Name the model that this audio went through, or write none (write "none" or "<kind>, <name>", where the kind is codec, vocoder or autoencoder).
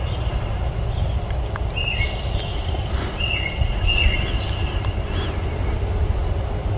none